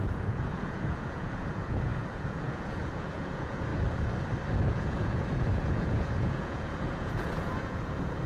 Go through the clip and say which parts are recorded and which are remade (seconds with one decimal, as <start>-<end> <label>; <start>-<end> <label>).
0.0-3.7 remade; 3.7-4.7 recorded; 4.7-8.3 remade